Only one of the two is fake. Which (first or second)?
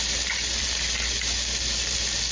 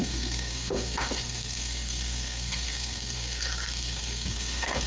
second